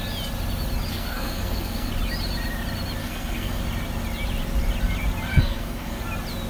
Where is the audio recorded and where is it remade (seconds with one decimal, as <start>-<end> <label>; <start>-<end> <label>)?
0.0-0.9 recorded; 0.9-1.9 remade; 1.9-3.0 recorded; 3.0-3.6 remade; 3.6-5.3 recorded; 5.3-6.0 remade; 6.0-6.5 recorded